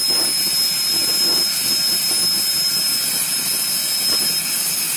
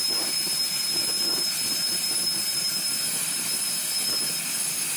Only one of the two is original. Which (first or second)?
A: first